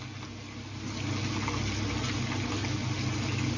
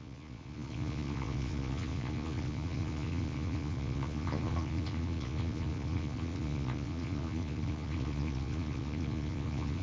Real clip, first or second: first